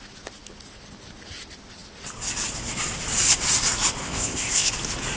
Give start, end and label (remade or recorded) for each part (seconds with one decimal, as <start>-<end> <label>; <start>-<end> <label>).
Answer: 0.0-4.0 recorded; 4.0-4.7 remade; 4.7-5.2 recorded

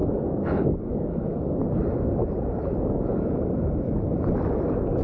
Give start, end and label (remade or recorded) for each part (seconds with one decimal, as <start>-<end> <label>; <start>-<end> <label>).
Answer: 0.0-1.6 remade; 1.6-5.0 recorded

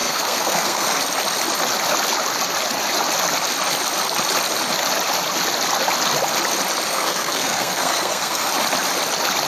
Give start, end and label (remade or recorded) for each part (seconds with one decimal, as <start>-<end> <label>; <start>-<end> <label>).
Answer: 0.0-1.0 remade; 1.0-6.9 recorded; 6.9-8.5 remade; 8.5-9.5 recorded

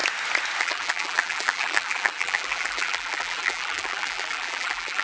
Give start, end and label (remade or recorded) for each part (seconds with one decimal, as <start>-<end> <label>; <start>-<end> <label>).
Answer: 0.0-0.6 recorded; 0.6-5.0 remade

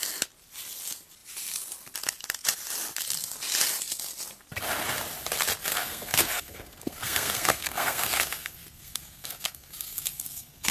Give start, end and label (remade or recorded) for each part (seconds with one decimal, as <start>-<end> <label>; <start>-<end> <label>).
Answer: 0.0-5.7 recorded; 5.7-10.7 remade

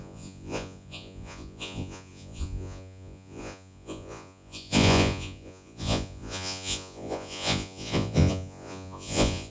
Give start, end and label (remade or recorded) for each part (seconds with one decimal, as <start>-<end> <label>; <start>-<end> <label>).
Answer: 0.0-9.5 remade